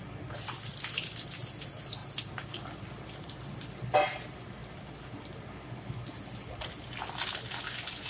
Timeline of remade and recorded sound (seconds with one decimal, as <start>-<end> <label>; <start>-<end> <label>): 0.0-8.1 recorded